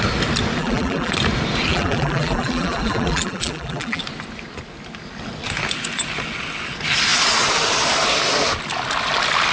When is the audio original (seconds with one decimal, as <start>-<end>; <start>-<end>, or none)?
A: 0.0-0.6; 1.1-1.7; 4.0-9.5